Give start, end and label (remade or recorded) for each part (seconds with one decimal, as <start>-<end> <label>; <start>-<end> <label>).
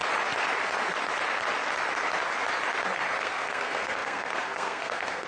0.0-3.2 recorded; 3.2-5.3 remade